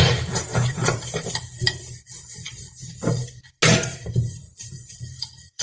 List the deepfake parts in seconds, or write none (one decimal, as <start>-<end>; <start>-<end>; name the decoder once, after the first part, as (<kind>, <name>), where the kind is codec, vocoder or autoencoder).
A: 0.0-3.2 (vocoder, BigVGAN v2); 4.1-5.6

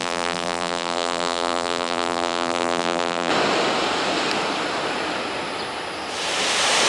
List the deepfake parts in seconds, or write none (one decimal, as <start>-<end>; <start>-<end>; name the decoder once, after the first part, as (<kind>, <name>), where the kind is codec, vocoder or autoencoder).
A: 0.0-3.3 (vocoder, BigVGAN v2)

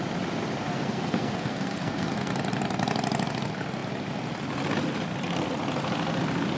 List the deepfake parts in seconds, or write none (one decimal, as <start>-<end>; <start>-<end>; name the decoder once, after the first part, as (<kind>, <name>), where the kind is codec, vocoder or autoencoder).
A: 0.6-2.3 (codec, SNAC)

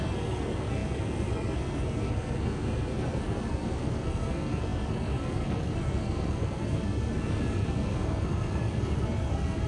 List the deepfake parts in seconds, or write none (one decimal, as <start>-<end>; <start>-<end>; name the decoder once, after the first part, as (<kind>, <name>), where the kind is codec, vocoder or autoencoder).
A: 0.0-9.7 (codec, SNAC)